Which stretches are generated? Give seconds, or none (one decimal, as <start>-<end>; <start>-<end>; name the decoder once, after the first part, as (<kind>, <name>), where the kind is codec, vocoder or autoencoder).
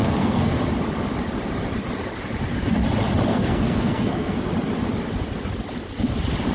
0.0-0.6 (codec, SNAC); 3.3-4.5